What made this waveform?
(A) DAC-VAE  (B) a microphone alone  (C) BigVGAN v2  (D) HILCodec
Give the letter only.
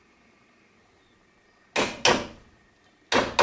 B